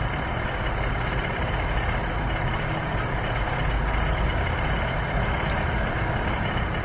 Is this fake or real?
fake